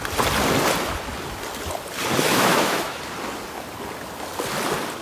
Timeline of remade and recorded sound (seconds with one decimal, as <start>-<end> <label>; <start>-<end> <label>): 0.0-2.3 recorded; 2.3-3.0 remade; 3.0-5.0 recorded